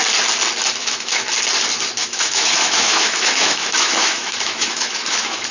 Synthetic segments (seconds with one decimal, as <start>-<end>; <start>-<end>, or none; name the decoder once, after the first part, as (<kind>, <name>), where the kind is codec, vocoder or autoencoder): 0.8-1.3 (autoencoder, DAC-VAE); 2.0-5.5